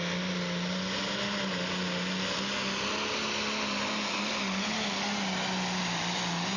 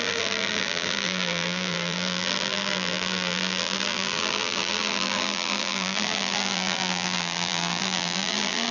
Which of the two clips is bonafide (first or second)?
first